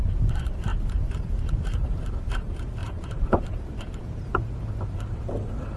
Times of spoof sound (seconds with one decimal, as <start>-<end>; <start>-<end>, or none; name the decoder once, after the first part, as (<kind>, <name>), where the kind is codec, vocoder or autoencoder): 2.8-4.0 (vocoder, BigVGAN v2)